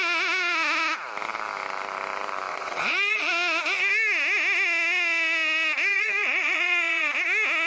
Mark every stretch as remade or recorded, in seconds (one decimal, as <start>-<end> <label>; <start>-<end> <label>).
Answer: 0.0-2.5 recorded; 2.5-3.3 remade; 3.3-5.9 recorded; 5.9-7.1 remade; 7.1-7.7 recorded

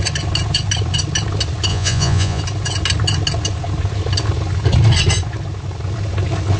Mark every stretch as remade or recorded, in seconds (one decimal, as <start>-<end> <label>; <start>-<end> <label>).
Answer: 0.0-1.7 recorded; 1.7-2.4 remade; 2.4-6.6 recorded

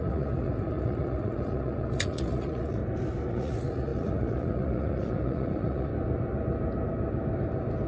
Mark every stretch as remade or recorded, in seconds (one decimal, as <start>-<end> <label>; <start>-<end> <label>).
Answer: 0.0-2.8 remade; 2.8-3.3 recorded; 3.3-5.9 remade; 5.9-7.9 recorded

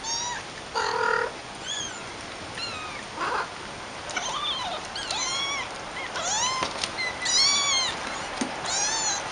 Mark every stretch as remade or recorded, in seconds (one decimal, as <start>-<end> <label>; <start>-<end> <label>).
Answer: 0.0-1.4 recorded; 1.4-2.1 remade; 2.1-9.3 recorded

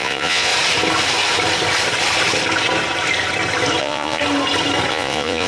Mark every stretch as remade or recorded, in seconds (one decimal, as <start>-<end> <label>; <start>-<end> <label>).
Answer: 0.0-0.5 remade; 0.5-3.8 recorded; 3.8-4.2 remade; 4.2-4.9 recorded; 4.9-5.5 remade

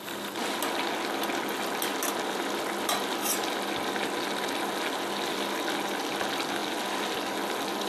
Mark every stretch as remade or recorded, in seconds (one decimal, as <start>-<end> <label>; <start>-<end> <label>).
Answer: 0.0-7.9 recorded